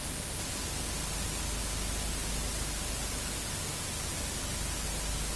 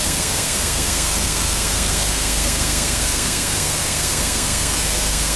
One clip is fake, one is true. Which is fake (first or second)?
second